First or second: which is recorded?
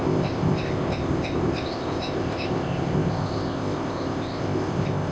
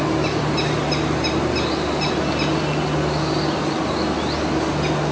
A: second